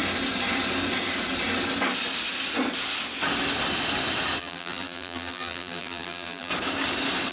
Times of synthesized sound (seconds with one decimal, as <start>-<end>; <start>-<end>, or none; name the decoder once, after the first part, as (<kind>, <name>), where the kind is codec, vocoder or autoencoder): 4.4-6.5 (vocoder, BigVGAN v2)